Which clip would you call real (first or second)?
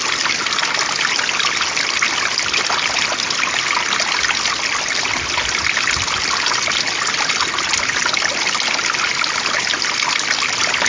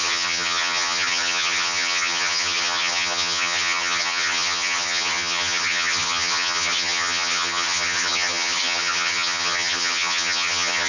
first